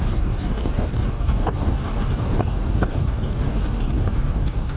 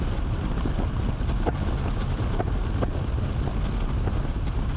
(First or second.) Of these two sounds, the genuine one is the second